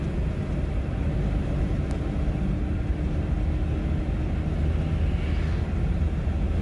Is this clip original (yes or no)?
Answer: yes